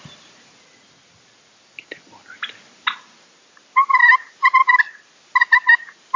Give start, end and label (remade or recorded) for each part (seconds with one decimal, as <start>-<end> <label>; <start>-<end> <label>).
0.0-6.2 recorded